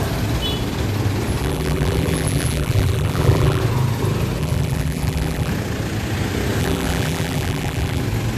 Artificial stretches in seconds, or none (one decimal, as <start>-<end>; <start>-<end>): 1.4-3.6; 4.4-5.5; 6.6-8.0

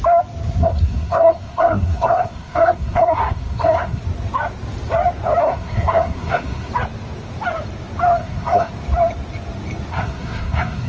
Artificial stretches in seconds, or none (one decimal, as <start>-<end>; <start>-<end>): 0.6-4.0; 5.4-6.7; 8.2-8.7; 9.9-10.9

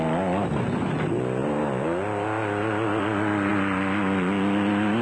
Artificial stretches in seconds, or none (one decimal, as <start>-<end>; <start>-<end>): none

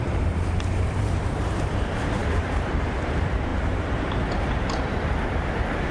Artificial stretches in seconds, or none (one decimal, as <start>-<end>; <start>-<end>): 0.0-5.9

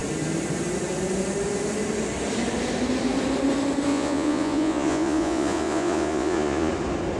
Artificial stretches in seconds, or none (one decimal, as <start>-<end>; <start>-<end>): 3.9-6.7

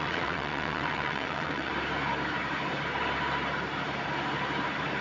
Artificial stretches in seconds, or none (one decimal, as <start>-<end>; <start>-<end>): 0.0-1.7